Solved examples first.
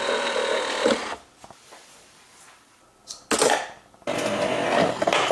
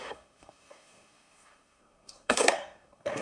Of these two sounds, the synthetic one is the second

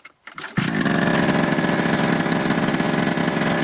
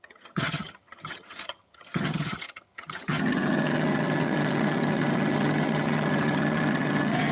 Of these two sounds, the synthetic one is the second